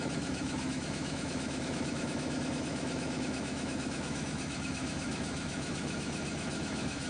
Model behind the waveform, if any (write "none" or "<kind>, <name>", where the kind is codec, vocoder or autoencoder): autoencoder, DAC-VAE